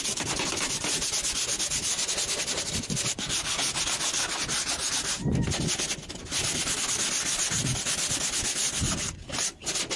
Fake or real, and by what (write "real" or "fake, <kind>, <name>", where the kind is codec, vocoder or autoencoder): real